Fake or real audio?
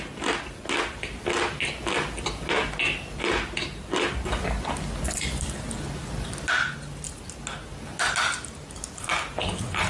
real